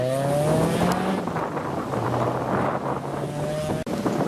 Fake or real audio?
real